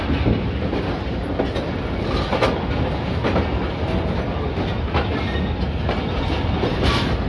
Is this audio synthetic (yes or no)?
no